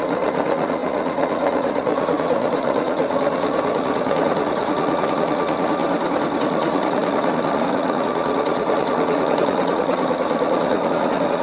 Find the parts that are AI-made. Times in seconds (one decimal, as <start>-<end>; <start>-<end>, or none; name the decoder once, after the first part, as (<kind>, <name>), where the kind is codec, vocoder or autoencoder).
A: 0.0-5.8 (vocoder, Vocos); 6.4-11.4